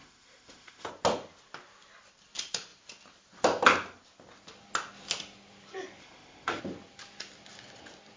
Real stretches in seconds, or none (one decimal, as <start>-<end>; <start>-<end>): 0.9-6.0; 6.6-8.2